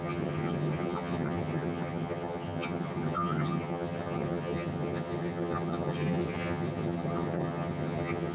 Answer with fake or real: fake